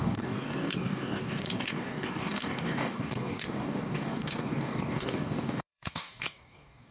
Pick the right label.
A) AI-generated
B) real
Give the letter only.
A